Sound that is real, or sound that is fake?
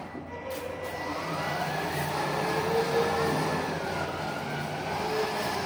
real